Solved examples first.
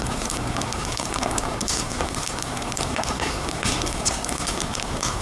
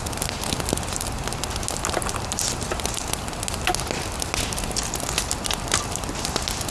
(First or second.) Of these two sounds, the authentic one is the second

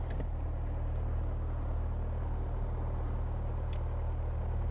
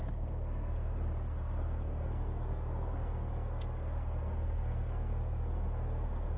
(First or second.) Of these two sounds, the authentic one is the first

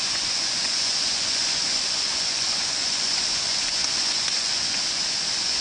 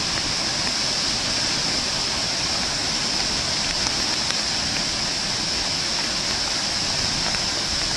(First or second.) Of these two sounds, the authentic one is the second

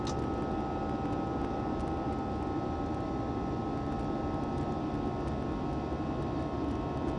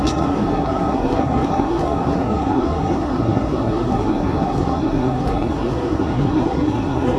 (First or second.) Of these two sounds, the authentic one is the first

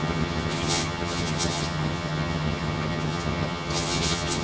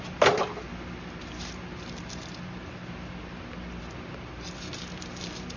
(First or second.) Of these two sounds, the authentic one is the second